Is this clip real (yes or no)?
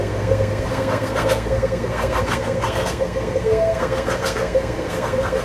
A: no